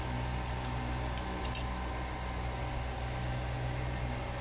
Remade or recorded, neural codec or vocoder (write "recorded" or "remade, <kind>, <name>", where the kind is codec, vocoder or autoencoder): recorded